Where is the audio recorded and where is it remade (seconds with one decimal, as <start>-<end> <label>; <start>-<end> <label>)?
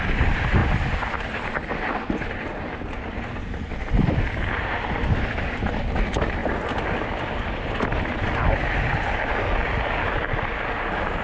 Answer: 0.0-6.4 remade; 6.4-11.2 recorded